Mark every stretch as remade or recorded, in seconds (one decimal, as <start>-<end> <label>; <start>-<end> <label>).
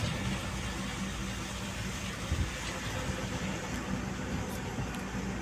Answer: 0.0-1.2 recorded; 1.2-2.6 remade; 2.6-5.4 recorded